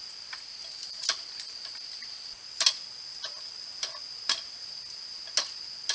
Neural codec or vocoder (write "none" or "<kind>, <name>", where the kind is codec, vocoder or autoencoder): none